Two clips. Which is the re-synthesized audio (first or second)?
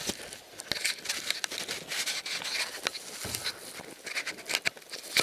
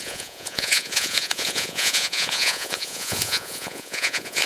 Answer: second